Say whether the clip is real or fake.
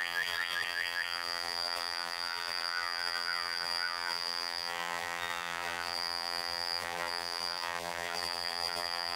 fake